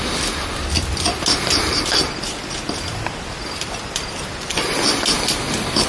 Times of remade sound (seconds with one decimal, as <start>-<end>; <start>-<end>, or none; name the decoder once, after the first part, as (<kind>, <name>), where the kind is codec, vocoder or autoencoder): none